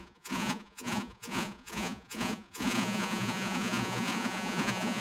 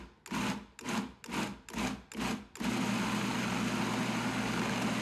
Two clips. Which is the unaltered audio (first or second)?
second